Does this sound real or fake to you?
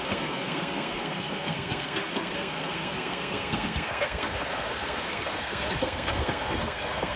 fake